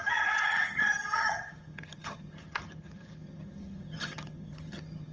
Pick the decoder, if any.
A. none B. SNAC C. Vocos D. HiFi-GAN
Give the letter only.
D